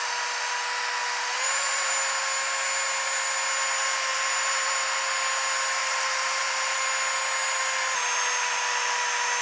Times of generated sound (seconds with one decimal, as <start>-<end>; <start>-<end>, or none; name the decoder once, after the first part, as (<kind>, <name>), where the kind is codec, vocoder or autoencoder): 1.0-1.9 (vocoder, BigVGAN v2); 4.1-5.1; 5.8-6.8